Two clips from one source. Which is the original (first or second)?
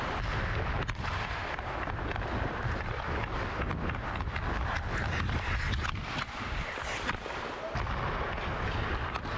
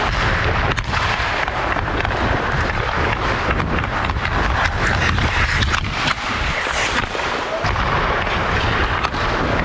first